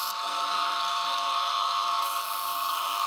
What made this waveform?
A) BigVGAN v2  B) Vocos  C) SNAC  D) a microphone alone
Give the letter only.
C